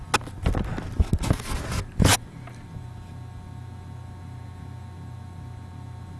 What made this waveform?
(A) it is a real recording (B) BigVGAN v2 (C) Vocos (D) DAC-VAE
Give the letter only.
A